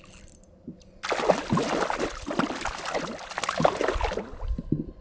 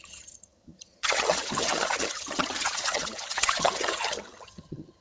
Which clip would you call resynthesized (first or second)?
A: second